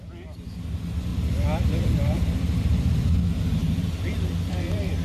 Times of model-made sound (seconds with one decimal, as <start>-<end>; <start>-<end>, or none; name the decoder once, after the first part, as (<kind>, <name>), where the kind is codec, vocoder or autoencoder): 1.1-3.2 (vocoder, BigVGAN v2); 3.6-5.0